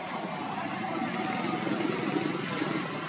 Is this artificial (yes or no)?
no